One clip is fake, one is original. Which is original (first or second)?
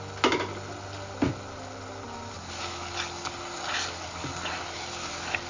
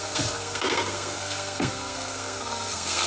first